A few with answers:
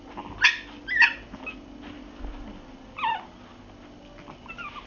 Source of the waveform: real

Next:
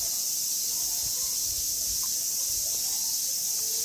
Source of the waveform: real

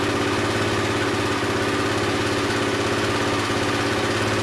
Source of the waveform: real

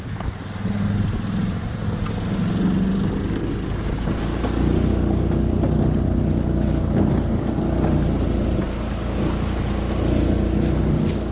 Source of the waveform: real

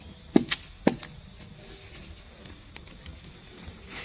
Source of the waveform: real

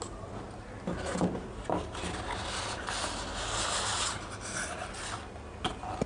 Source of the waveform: real